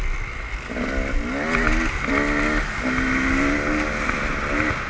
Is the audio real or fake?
real